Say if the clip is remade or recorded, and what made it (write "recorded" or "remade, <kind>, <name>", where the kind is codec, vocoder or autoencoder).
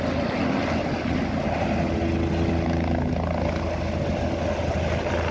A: recorded